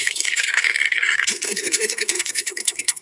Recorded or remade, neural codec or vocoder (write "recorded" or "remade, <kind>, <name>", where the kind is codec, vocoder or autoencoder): remade, codec, SNAC